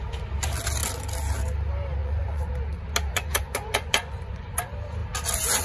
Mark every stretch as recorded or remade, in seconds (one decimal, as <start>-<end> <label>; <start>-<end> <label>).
0.0-2.0 recorded; 2.0-2.5 remade; 2.5-3.1 recorded; 3.1-4.6 remade; 4.6-5.6 recorded